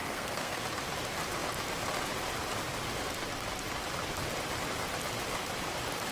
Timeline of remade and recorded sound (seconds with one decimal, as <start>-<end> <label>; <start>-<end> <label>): 0.0-0.6 remade; 0.6-6.1 recorded